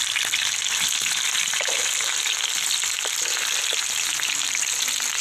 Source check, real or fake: real